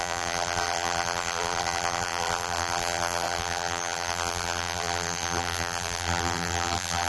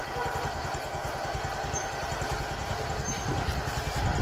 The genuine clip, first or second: second